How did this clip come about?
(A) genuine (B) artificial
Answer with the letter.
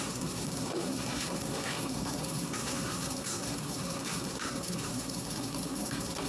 B